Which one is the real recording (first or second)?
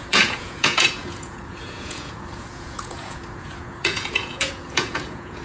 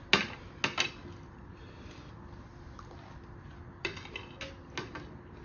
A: second